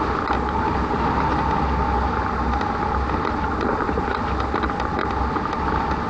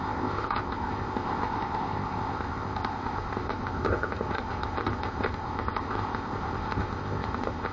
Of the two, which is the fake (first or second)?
second